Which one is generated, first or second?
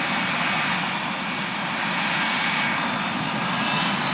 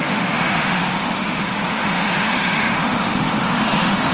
second